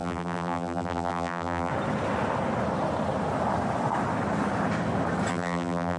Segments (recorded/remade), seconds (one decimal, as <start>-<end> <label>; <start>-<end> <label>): 0.0-1.7 remade; 1.7-5.3 recorded; 5.3-6.0 remade